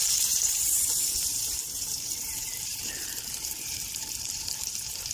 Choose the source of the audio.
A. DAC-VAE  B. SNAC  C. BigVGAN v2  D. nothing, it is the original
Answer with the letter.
C